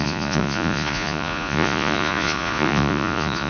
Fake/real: fake